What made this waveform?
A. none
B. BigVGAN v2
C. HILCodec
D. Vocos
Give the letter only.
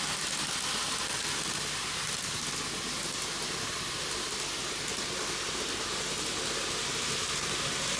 A